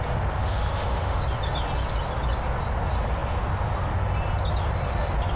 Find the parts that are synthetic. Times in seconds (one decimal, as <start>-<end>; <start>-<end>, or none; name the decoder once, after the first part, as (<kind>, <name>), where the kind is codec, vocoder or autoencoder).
0.4-1.2 (autoencoder, DAC-VAE)